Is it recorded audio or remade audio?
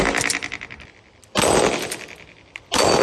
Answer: recorded